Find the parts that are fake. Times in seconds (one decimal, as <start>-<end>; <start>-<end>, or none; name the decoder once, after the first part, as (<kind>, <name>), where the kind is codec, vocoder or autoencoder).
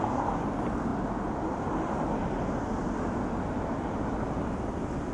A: none